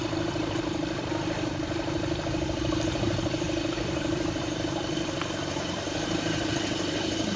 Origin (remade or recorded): remade